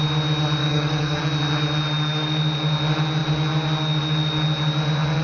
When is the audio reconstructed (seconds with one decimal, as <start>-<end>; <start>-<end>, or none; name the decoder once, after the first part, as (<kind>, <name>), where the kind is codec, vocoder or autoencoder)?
0.6-1.2 (codec, DAC)